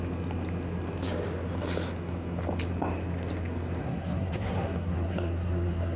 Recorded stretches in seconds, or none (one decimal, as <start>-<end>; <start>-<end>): 0.0-3.8